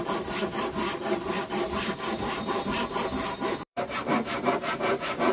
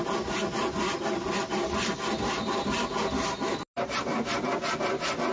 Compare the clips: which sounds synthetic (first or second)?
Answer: first